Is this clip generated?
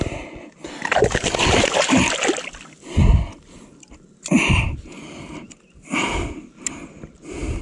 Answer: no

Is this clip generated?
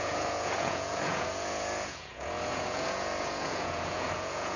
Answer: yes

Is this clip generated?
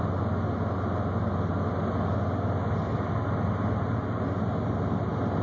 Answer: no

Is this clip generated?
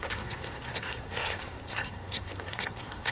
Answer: yes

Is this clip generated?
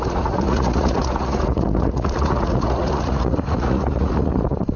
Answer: yes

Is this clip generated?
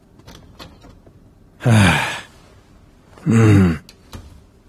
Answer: no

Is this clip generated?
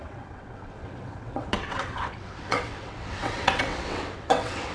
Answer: yes